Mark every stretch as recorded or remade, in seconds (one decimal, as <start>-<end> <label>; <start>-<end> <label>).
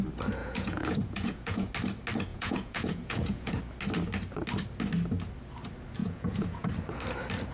0.0-0.4 recorded; 0.4-1.7 remade; 1.7-2.3 recorded; 2.3-3.6 remade; 3.6-6.0 recorded; 6.0-6.7 remade; 6.7-7.5 recorded